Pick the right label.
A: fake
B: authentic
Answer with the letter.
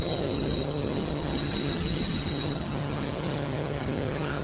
A